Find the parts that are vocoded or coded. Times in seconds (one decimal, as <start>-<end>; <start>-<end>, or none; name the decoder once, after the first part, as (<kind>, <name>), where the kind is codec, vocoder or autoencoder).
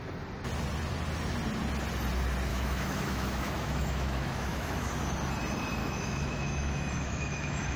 2.5-4.9 (autoencoder, DAC-VAE); 5.8-7.8